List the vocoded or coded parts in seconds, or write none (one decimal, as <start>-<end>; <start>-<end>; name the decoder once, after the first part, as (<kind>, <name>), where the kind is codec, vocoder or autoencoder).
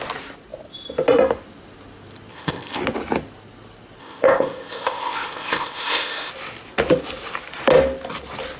2.3-2.8 (codec, ZipCodec); 4.0-6.3